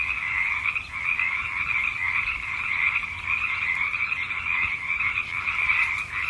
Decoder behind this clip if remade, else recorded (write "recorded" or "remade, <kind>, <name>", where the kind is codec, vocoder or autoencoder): remade, vocoder, BigVGAN v2